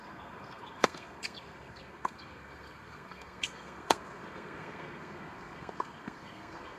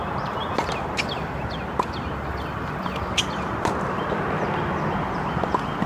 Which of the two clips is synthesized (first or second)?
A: first